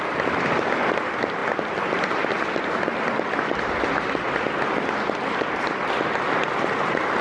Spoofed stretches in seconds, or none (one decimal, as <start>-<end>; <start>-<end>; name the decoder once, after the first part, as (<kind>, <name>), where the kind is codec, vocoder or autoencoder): none